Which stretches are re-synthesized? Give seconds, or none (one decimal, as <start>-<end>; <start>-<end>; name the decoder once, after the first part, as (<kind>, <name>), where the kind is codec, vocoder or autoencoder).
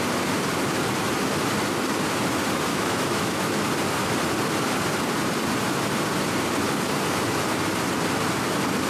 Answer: 2.7-3.5 (autoencoder, DAC-VAE)